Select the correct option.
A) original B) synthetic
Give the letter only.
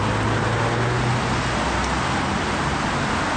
A